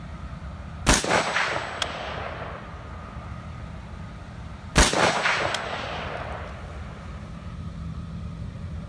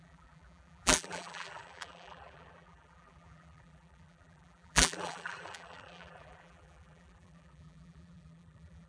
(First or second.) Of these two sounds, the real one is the first